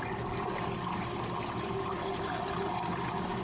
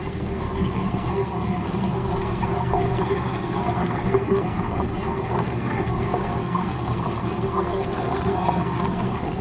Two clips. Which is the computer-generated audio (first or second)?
second